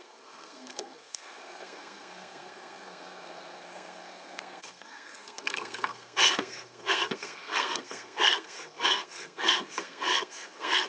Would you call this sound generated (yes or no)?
yes